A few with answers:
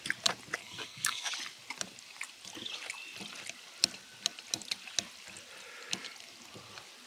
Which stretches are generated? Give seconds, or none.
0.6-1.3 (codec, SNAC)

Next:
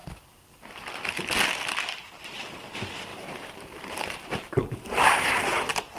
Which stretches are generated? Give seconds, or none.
3.1-5.3 (vocoder, BigVGAN v2)

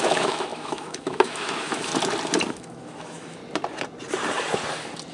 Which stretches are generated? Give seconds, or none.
0.0-1.9 (autoencoder, DAC-VAE); 2.5-3.4